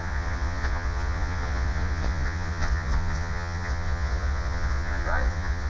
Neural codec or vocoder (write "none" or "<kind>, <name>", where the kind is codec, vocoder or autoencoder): vocoder, Vocos